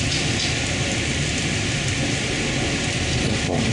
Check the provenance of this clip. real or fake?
real